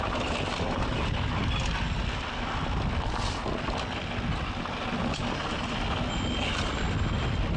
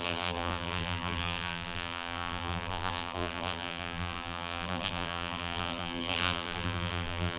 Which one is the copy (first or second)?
second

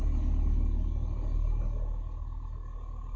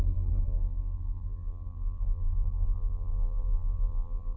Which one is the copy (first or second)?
second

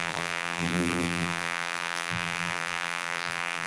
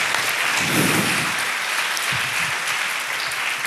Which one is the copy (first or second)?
first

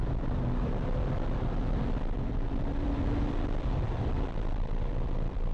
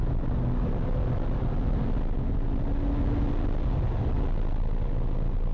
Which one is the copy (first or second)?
first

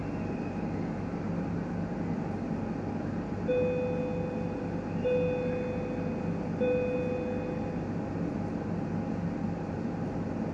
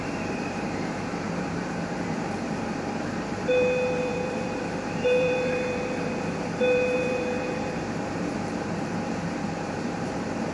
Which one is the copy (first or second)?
second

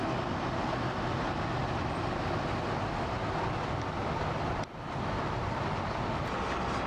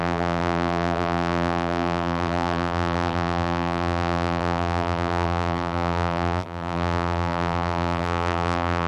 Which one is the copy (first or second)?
second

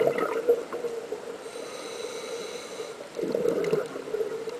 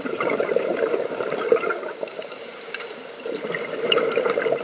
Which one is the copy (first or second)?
second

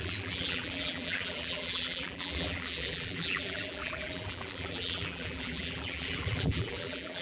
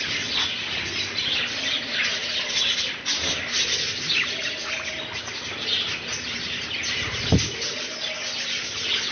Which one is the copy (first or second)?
first